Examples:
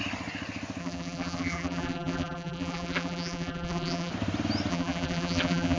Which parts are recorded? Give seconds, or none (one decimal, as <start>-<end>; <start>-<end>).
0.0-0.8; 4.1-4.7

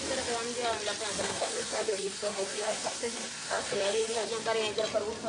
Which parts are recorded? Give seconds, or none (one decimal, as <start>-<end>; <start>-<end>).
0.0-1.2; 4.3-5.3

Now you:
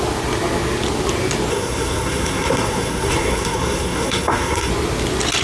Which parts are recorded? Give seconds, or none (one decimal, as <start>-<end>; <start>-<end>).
0.0-1.5; 4.7-5.4